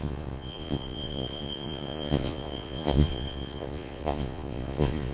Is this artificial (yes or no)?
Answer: yes